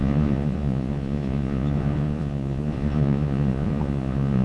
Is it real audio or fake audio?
fake